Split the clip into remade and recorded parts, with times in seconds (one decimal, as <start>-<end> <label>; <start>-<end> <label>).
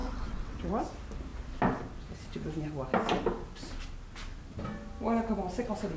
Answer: 0.0-0.7 remade; 0.7-6.0 recorded